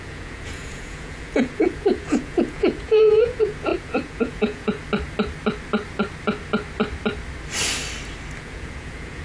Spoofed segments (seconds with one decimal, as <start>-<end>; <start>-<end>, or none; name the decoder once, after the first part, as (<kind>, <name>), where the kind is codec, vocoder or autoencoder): 0.0-4.8 (vocoder, Vocos); 8.4-9.2